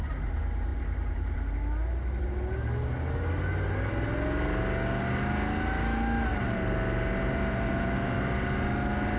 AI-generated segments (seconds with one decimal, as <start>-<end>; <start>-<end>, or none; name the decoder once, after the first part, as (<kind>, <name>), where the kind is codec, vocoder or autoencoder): 0.7-1.5 (vocoder, BigVGAN v2); 6.3-6.8; 7.2-8.3

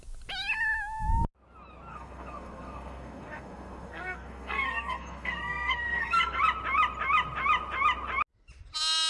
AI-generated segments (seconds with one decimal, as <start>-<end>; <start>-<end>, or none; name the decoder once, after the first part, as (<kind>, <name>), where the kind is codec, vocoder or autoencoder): 1.9-6.4 (codec, SNAC)